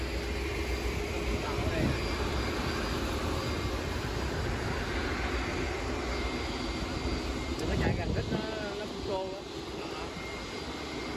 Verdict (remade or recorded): recorded